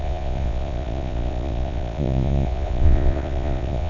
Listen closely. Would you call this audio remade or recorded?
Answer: remade